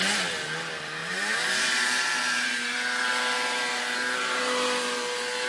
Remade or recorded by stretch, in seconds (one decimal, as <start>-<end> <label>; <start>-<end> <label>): 0.0-1.0 recorded; 1.0-4.3 remade; 4.3-5.5 recorded